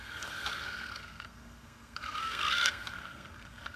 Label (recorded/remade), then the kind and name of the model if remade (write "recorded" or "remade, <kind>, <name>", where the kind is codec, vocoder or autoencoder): remade, codec, SNAC